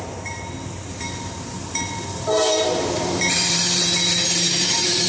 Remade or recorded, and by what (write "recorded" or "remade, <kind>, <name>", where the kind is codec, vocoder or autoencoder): remade, vocoder, BigVGAN v2